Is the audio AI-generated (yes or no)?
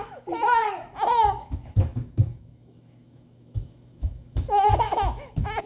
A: yes